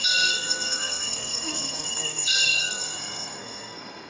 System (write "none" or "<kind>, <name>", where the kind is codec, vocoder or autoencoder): codec, SNAC